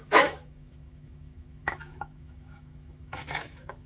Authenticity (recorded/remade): remade